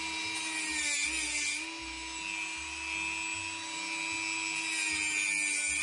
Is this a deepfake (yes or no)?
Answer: no